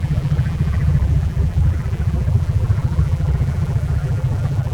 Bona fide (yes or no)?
no